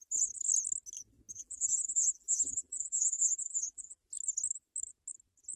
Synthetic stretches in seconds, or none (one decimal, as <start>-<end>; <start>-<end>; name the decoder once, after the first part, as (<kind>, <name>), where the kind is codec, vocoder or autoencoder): 1.3-4.0 (vocoder, BigVGAN v2)